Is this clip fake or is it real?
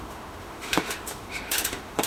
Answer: fake